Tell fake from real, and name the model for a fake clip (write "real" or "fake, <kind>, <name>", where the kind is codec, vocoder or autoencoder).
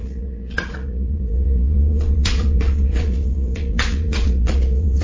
fake, vocoder, Vocos